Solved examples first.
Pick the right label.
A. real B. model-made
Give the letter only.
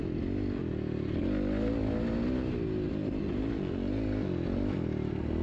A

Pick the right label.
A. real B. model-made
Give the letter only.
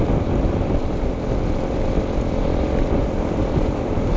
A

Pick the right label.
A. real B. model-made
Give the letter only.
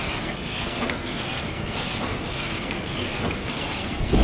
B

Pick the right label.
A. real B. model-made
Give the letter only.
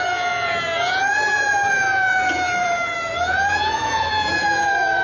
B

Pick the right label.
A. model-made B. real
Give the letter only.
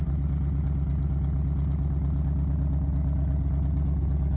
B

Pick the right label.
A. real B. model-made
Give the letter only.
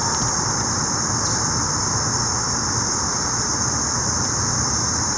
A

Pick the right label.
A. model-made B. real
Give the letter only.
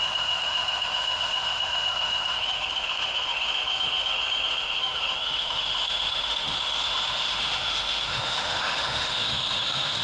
A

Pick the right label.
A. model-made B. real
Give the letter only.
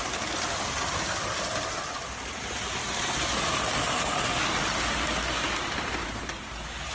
B